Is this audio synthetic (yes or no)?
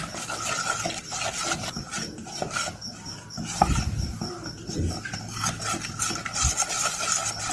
no